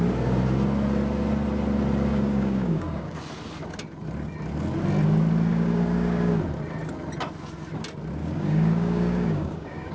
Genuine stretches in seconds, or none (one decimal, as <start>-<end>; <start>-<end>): 0.0-2.1; 3.2-5.5; 6.3-8.2